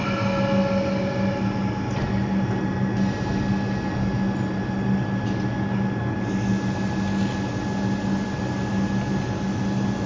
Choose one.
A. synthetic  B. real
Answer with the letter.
B